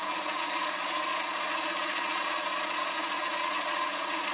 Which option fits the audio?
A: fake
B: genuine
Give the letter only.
A